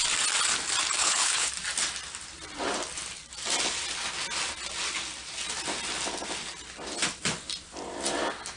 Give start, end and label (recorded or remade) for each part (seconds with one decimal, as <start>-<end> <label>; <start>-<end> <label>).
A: 0.0-1.0 recorded; 1.0-1.5 remade; 1.5-8.6 recorded